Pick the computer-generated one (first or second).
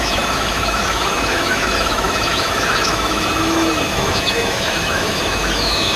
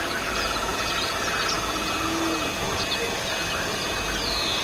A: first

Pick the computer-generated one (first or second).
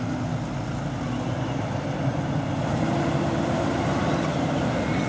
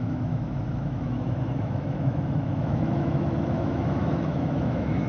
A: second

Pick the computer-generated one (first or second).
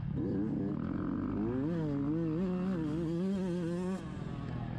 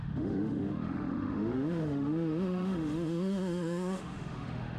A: second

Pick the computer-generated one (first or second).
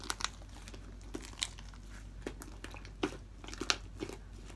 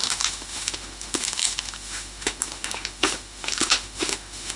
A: second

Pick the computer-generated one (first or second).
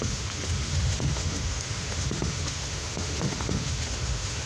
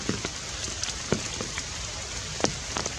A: first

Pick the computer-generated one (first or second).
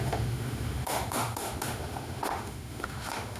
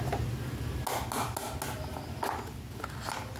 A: first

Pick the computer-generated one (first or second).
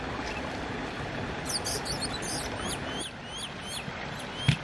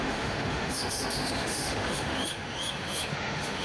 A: second